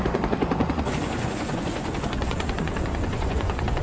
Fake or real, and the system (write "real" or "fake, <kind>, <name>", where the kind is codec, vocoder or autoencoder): fake, vocoder, Vocos